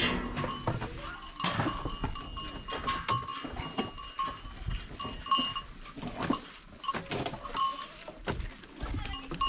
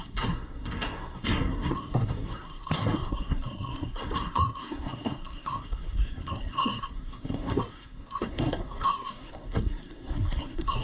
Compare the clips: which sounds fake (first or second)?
second